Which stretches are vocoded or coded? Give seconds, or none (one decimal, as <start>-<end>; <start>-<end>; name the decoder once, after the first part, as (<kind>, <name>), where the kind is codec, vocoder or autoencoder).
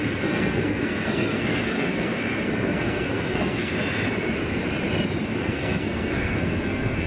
0.0-3.7 (codec, SNAC); 5.4-7.1